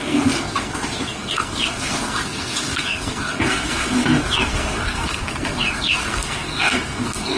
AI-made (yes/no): yes